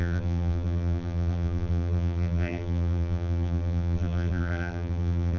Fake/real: fake